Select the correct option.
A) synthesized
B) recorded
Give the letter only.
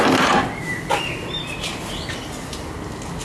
B